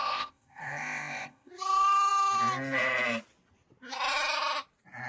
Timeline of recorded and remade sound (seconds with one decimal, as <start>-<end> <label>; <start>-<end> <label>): 0.0-1.5 remade; 1.5-5.1 recorded